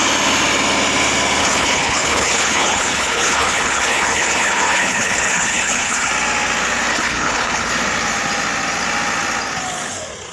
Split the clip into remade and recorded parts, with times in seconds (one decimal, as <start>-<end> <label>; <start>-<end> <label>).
0.0-1.4 recorded; 1.4-6.1 remade; 6.1-6.9 recorded; 6.9-7.7 remade; 7.7-10.3 recorded